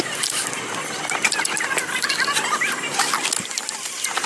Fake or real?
real